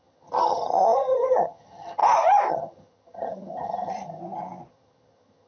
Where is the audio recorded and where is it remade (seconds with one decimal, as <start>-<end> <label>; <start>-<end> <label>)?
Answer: 0.0-2.0 remade; 2.0-2.5 recorded; 2.5-4.2 remade; 4.2-4.7 recorded; 4.7-5.5 remade